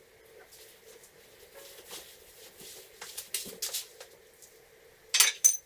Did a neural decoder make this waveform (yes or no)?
no